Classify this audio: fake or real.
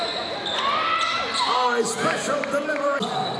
real